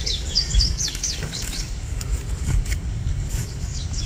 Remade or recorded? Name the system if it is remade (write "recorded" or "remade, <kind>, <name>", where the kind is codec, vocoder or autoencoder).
remade, codec, DAC